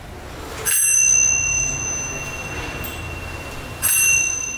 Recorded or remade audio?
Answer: recorded